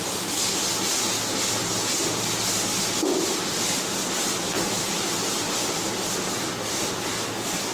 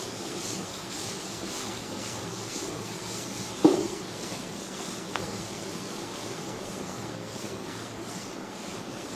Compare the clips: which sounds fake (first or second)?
second